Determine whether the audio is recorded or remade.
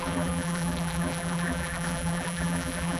remade